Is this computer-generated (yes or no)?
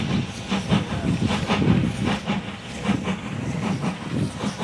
no